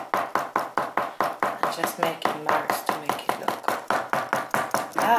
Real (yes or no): yes